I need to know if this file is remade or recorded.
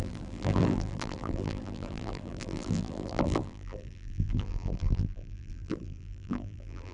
remade